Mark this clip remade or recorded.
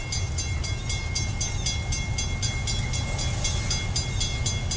recorded